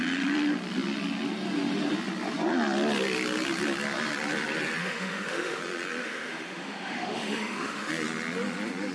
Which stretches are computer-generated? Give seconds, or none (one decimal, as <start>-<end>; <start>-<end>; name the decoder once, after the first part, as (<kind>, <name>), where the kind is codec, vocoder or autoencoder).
4.8-5.6 (autoencoder, DAC-VAE); 6.0-7.9